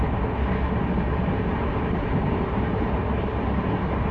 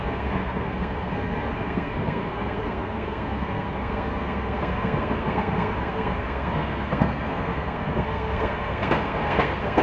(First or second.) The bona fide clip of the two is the first